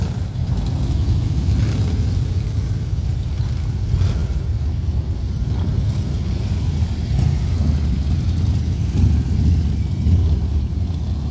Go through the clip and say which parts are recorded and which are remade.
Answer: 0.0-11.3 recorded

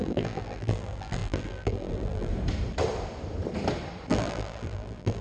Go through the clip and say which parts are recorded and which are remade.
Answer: 0.0-2.3 remade; 2.3-4.1 recorded; 4.1-5.2 remade

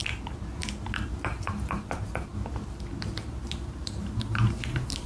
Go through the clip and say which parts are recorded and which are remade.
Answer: 0.0-1.2 recorded; 1.2-2.3 remade; 2.3-3.3 recorded; 3.3-5.1 remade

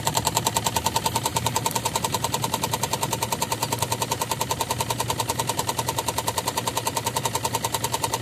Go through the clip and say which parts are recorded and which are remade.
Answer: 0.0-1.3 recorded; 1.3-2.0 remade; 2.0-8.2 recorded

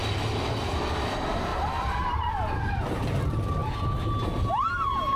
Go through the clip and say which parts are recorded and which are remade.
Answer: 0.0-1.5 recorded; 1.5-3.2 remade; 3.2-5.2 recorded

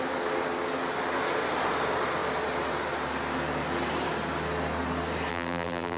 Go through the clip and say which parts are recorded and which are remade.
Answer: 0.0-5.3 recorded; 5.3-6.0 remade